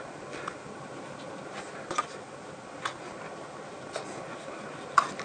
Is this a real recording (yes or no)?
yes